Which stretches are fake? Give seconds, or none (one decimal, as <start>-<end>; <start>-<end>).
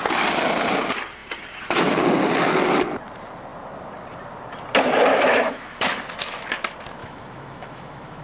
5.1-6.0; 7.0-8.2